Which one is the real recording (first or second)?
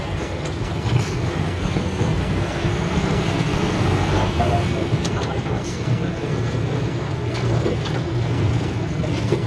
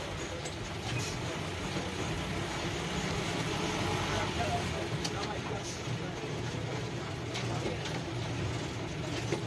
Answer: second